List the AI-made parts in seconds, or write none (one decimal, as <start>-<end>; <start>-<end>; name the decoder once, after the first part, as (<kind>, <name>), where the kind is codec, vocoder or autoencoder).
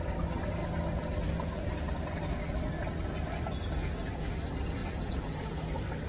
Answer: none